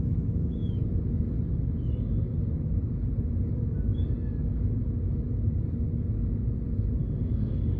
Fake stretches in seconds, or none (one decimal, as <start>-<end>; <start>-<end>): 7.0-7.8